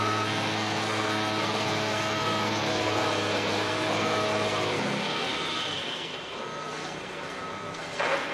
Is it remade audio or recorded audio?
remade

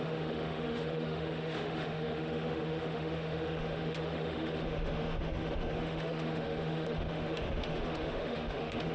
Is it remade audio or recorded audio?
remade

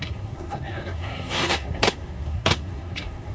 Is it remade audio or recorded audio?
remade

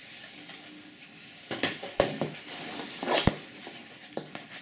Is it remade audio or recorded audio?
recorded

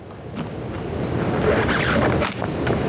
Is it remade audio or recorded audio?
recorded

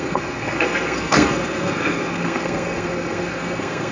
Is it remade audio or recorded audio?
remade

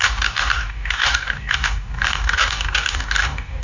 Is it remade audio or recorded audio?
remade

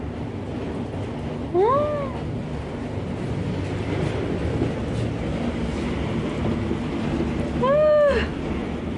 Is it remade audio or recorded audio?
recorded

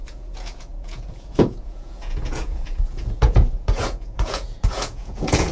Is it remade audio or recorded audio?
remade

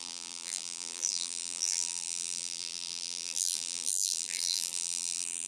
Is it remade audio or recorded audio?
remade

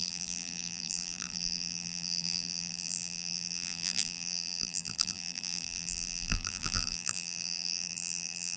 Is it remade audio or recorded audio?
remade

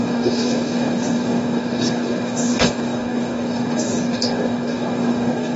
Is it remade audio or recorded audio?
remade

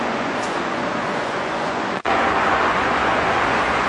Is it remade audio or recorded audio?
remade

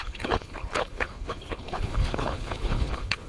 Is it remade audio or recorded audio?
remade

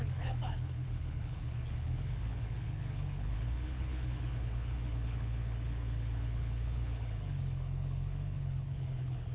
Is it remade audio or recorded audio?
remade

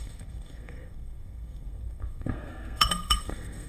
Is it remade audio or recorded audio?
remade